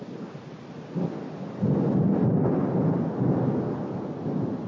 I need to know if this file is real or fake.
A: real